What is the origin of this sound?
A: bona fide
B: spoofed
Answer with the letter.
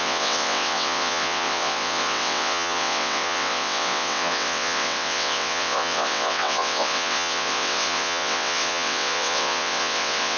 B